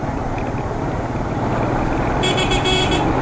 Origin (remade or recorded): recorded